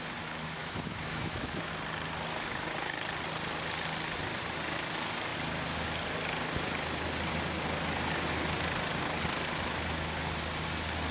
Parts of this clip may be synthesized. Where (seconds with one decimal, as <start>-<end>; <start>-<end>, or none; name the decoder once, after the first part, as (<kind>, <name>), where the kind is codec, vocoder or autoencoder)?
0.6-1.7 (autoencoder, DAC-VAE)